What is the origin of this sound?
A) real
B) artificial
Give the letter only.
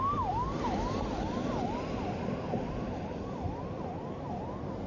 A